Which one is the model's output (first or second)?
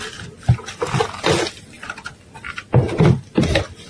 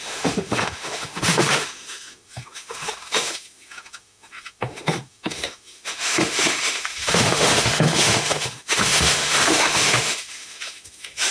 second